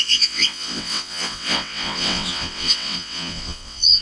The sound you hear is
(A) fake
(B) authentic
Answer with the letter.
A